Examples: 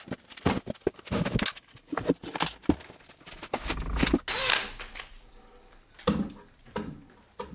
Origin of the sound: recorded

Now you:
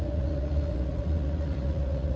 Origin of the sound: remade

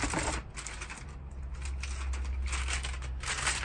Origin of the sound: recorded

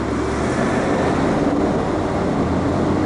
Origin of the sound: recorded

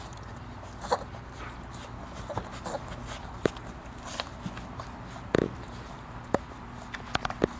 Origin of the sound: recorded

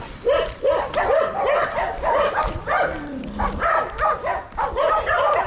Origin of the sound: recorded